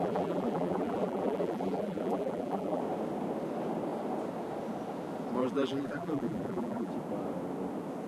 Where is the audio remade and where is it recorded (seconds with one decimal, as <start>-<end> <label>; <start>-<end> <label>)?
0.0-2.8 remade; 2.8-5.4 recorded; 5.4-6.9 remade; 6.9-8.1 recorded